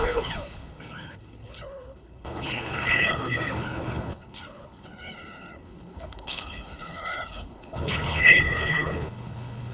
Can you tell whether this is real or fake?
fake